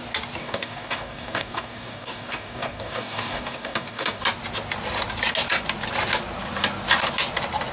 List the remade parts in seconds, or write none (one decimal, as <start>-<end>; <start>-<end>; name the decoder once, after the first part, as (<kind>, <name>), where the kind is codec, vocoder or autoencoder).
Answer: 0.4-4.2 (codec, DAC)